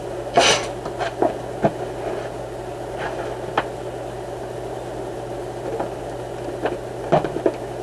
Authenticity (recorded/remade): recorded